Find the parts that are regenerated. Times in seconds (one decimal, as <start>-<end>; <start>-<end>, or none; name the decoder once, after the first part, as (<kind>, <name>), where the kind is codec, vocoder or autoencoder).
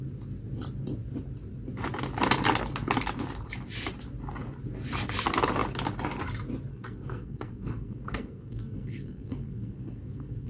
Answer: 6.7-10.5 (codec, SNAC)